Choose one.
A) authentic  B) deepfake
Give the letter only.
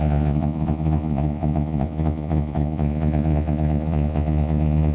B